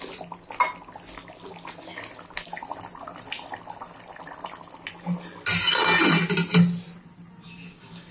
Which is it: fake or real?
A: real